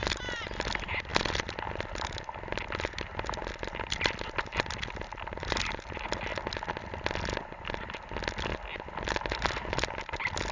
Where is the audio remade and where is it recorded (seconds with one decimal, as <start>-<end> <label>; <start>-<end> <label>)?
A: 0.0-10.5 recorded